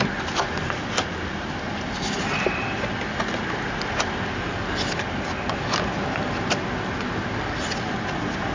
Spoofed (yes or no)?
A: no